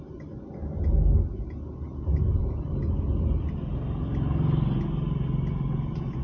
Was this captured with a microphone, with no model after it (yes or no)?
yes